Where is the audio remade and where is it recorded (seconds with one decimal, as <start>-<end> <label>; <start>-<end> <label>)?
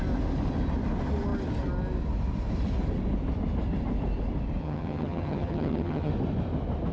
0.0-4.6 recorded; 4.6-6.1 remade; 6.1-6.9 recorded